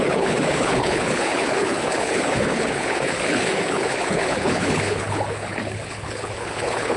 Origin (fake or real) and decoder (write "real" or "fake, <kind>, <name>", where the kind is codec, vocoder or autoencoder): fake, codec, HILCodec